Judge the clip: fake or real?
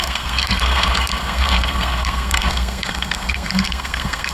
fake